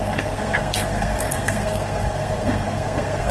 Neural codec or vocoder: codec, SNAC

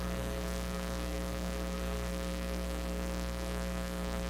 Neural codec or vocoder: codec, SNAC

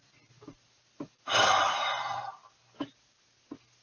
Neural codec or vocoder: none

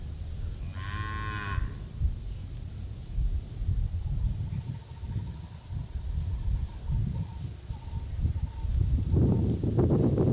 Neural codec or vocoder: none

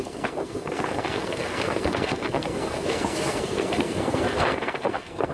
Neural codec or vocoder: codec, SNAC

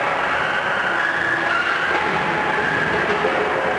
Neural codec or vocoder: none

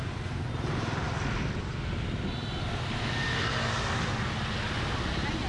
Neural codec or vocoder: none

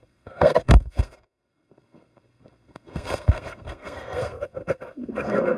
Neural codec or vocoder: codec, SNAC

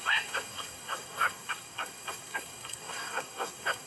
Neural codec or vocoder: codec, SNAC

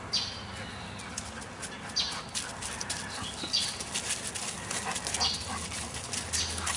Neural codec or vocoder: none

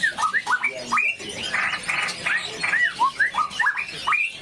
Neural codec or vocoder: none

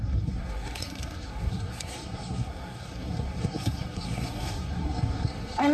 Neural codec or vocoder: codec, SNAC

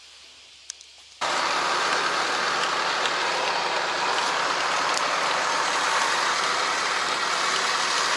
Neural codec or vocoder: none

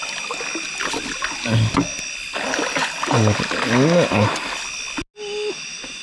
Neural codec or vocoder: none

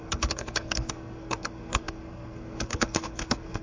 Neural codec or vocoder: codec, SNAC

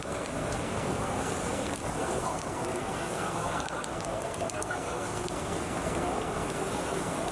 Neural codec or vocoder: codec, SNAC